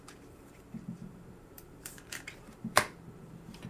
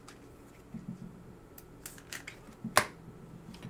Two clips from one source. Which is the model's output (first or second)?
first